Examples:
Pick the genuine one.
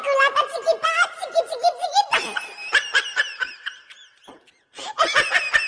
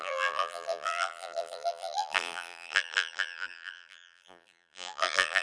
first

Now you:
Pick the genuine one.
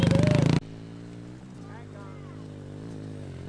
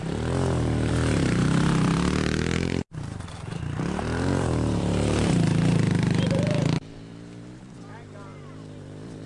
first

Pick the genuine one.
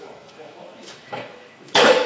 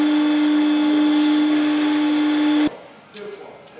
second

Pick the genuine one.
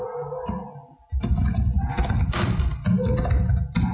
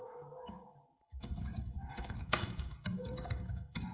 first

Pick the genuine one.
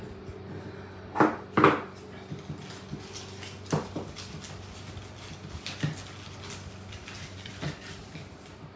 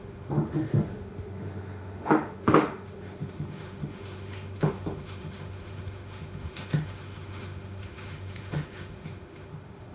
first